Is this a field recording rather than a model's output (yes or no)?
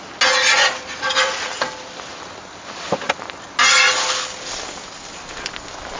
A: yes